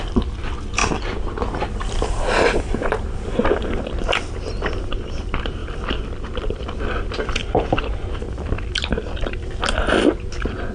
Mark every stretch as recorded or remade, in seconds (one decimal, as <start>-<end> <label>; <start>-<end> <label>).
0.0-0.8 remade; 0.8-4.0 recorded; 4.0-5.6 remade; 5.6-6.3 recorded; 6.3-10.7 remade